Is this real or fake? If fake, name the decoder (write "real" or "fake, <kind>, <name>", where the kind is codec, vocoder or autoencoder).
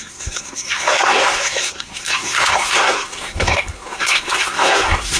fake, codec, SNAC